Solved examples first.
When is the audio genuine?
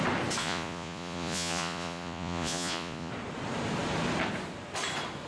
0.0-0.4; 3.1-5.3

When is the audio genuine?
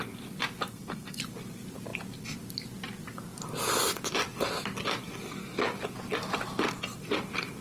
0.0-0.7; 1.2-7.6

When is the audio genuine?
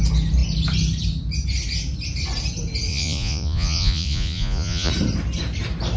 0.0-2.9; 4.9-6.0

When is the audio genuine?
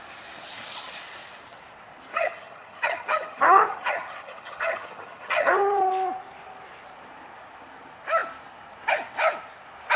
0.0-2.1; 5.9-10.0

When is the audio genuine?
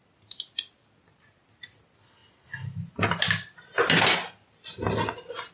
0.0-5.5